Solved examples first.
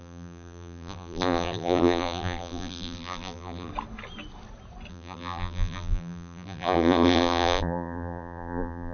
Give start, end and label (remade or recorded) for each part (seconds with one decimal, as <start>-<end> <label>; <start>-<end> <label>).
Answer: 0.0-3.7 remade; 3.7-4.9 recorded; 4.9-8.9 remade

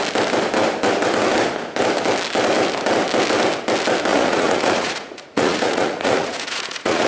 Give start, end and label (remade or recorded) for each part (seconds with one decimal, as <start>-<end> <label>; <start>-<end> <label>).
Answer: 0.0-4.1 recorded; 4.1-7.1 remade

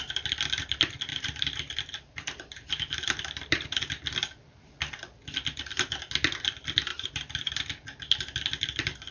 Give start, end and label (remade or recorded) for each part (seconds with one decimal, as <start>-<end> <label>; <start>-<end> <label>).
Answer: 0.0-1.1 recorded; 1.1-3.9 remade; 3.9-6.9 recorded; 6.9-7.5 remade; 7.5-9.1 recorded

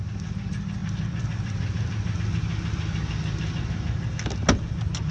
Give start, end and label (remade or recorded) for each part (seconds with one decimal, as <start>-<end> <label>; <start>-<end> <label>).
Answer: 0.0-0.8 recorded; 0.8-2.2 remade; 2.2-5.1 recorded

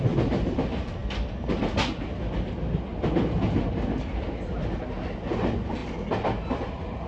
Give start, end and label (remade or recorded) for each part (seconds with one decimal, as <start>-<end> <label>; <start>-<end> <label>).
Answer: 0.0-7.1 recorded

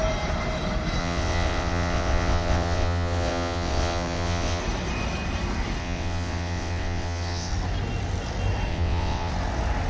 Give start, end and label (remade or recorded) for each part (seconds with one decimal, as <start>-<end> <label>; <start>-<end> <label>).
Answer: 0.0-1.0 recorded; 1.0-4.6 remade; 4.6-5.8 recorded; 5.8-7.5 remade; 7.5-8.7 recorded; 8.7-9.3 remade; 9.3-9.9 recorded

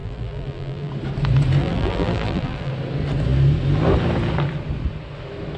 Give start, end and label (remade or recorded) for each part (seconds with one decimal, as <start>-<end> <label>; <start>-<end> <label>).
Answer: 0.0-0.9 remade; 0.9-1.6 recorded; 1.6-2.7 remade; 2.7-5.6 recorded

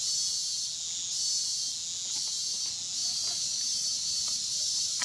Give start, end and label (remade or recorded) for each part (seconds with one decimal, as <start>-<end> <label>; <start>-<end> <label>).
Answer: 0.0-3.0 recorded; 3.0-5.0 remade